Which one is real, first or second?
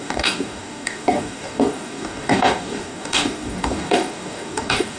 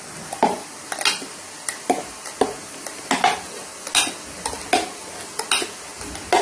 second